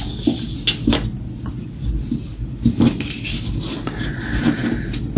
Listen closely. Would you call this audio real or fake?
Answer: real